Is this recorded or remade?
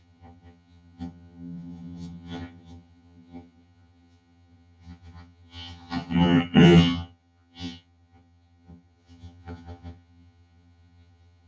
remade